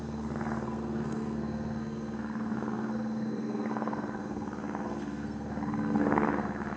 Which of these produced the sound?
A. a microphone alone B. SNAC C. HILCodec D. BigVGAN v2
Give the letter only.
B